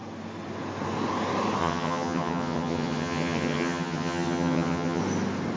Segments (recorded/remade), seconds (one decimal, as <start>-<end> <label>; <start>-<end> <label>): 0.0-1.6 recorded; 1.6-5.0 remade; 5.0-5.6 recorded